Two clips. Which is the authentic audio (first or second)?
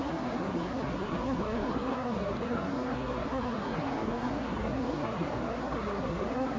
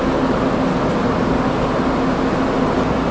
second